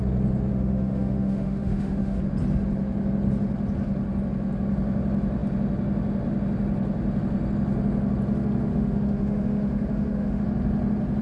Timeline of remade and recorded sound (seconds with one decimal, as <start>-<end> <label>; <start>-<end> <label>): 0.0-0.5 recorded; 0.5-2.2 remade; 2.2-8.7 recorded; 8.7-10.4 remade; 10.4-11.2 recorded

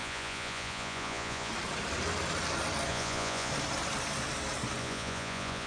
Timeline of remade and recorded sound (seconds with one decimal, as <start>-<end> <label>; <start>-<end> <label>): 0.0-1.5 remade; 1.5-2.9 recorded; 2.9-3.5 remade; 3.5-4.8 recorded; 4.8-5.7 remade

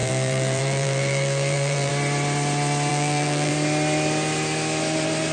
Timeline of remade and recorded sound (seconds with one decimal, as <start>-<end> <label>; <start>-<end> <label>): 0.0-1.9 remade; 1.9-2.9 recorded; 2.9-3.5 remade; 3.5-5.3 recorded

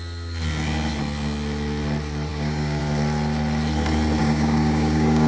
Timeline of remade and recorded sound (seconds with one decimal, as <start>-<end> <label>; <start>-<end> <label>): 0.0-2.3 recorded; 2.3-2.8 remade; 2.8-4.2 recorded; 4.2-5.3 remade

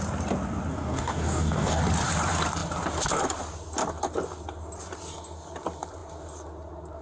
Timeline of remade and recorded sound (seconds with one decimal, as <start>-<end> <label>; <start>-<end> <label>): 0.0-0.7 recorded; 0.7-1.8 remade; 1.8-7.0 recorded

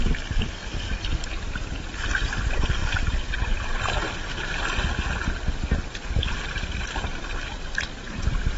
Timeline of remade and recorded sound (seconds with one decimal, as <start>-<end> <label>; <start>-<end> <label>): 0.0-2.8 remade; 2.8-6.2 recorded; 6.2-8.6 remade